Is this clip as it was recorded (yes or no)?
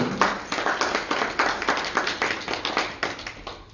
yes